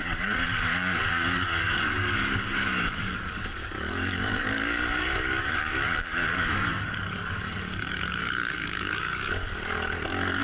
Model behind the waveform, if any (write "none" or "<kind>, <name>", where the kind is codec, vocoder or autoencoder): codec, DAC